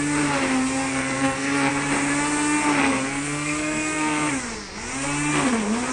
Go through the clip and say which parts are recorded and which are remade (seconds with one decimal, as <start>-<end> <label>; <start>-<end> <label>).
0.0-0.9 recorded; 0.9-1.7 remade; 1.7-2.8 recorded; 2.8-4.3 remade; 4.3-5.9 recorded